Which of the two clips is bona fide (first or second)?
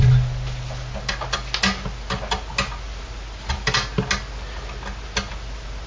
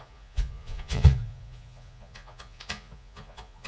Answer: first